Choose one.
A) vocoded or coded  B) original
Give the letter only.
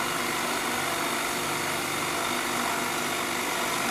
B